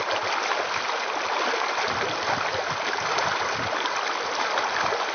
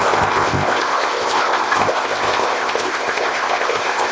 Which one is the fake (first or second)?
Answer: second